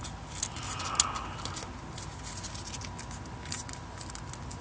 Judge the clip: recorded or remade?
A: recorded